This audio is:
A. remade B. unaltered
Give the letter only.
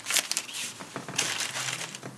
B